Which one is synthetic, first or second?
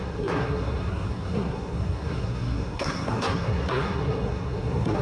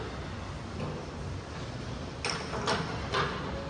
first